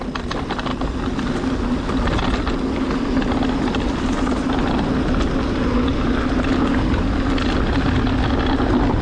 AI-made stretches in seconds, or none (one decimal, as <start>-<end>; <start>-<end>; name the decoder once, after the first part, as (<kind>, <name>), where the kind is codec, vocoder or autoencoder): none